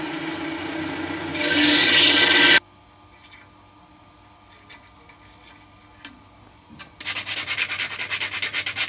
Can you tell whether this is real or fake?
real